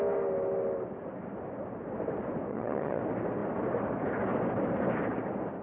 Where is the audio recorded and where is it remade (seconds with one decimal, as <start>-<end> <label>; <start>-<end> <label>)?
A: 0.0-2.5 recorded; 2.5-3.0 remade; 3.0-5.6 recorded